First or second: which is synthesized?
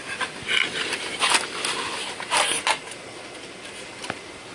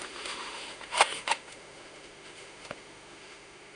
second